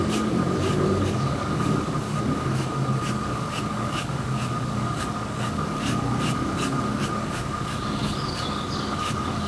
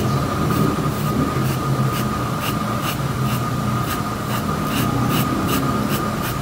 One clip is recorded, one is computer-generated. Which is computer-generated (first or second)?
first